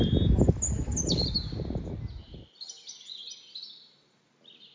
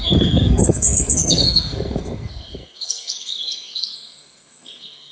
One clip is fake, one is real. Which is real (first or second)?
first